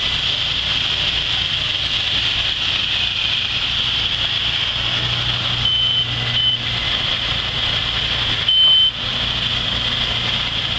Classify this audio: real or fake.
real